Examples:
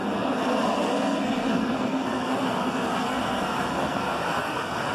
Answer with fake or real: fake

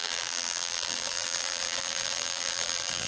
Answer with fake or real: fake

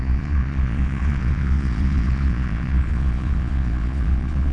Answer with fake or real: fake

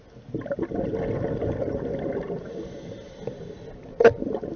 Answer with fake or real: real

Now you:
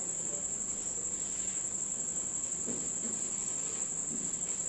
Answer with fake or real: real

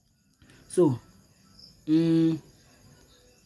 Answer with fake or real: real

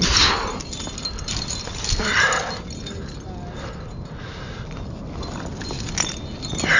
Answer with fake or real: real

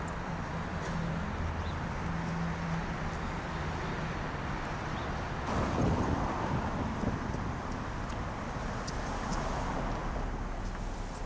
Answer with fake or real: real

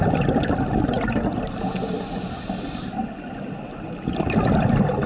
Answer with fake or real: real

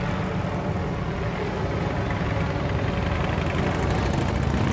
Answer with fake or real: real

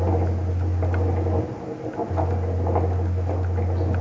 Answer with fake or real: real